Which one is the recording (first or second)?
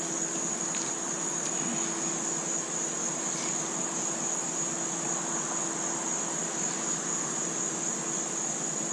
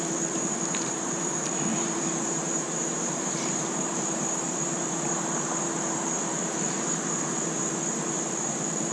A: first